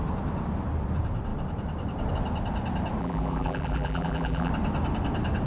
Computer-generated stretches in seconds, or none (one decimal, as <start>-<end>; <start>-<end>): 3.0-4.5